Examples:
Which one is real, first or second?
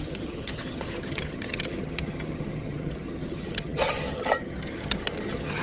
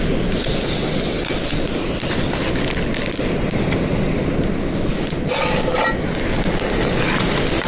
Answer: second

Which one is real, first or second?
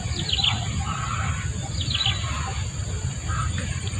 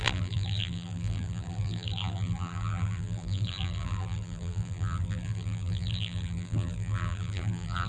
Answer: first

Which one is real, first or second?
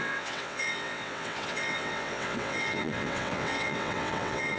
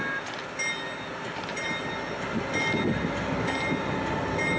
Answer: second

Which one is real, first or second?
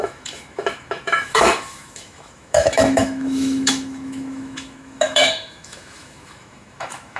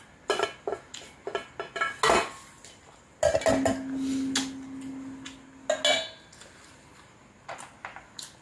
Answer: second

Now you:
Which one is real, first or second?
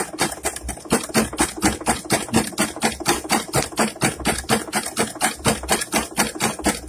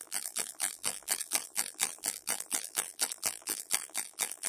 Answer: first